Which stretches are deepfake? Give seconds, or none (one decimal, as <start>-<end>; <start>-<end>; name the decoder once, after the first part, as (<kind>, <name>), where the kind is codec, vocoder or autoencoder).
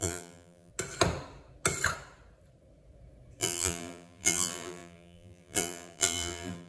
0.0-0.7 (vocoder, BigVGAN v2); 3.4-6.7